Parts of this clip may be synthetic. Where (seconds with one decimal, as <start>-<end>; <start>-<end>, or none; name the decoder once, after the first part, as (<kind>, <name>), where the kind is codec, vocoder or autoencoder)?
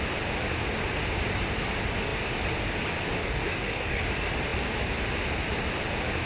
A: 3.2-4.0 (codec, DAC)